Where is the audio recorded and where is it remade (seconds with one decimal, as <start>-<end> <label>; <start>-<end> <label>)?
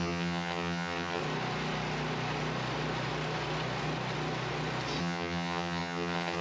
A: 0.0-1.2 remade; 1.2-5.0 recorded; 5.0-6.4 remade